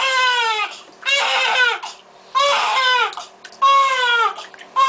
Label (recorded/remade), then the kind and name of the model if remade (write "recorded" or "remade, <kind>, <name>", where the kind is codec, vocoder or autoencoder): recorded